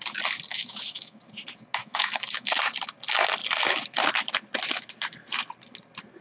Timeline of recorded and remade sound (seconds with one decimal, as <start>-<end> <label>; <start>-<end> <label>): 0.0-0.5 recorded; 0.5-1.2 remade; 1.2-1.8 recorded; 1.8-2.5 remade; 2.5-6.2 recorded